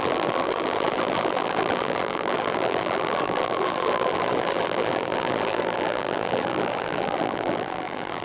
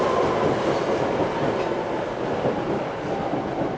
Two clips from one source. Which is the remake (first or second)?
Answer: first